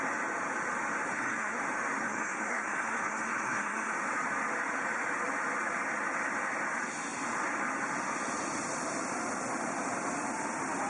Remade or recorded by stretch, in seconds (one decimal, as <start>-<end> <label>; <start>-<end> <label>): 0.0-1.1 recorded; 1.1-1.6 remade; 1.6-2.0 recorded; 2.0-3.9 remade; 3.9-10.9 recorded